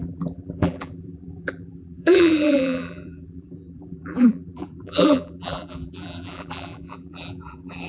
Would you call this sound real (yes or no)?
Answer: no